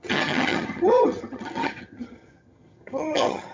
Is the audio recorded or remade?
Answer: remade